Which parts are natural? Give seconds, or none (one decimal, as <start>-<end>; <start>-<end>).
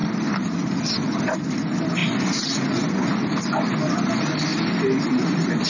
0.0-5.7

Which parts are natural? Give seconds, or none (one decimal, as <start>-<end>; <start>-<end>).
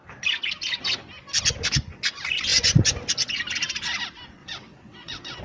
0.0-4.4